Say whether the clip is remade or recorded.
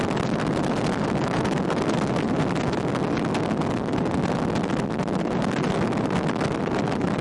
recorded